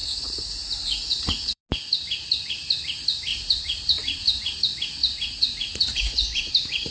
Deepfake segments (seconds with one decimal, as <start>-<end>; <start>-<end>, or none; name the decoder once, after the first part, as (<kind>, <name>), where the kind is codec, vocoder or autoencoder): 0.0-1.6 (vocoder, Vocos); 3.3-4.6; 5.0-6.5